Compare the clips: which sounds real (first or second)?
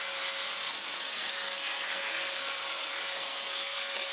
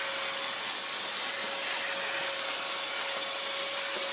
second